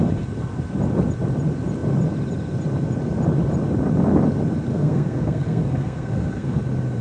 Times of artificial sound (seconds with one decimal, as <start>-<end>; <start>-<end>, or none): 4.7-6.6